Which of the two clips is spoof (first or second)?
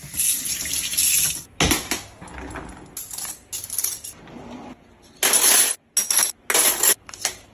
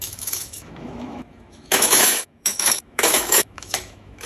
second